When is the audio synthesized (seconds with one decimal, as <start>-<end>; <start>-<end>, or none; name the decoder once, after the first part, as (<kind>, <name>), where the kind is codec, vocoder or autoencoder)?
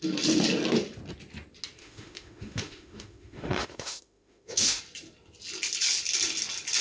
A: 1.8-4.8 (autoencoder, DAC-VAE)